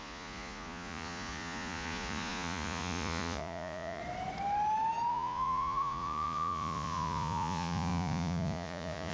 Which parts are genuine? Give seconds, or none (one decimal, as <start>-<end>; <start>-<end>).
4.0-5.1